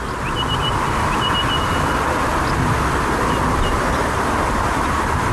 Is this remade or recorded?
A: recorded